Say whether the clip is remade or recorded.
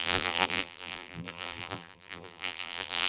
remade